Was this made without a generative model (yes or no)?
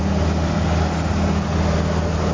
yes